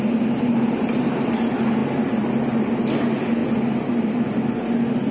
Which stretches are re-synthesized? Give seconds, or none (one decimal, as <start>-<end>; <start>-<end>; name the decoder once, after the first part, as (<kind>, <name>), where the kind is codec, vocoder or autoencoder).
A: none